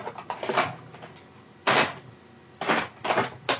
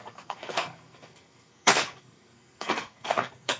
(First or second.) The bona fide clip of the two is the first